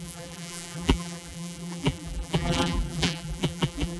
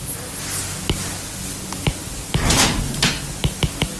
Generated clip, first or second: first